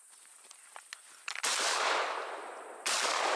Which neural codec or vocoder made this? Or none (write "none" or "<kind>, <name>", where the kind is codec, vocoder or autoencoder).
none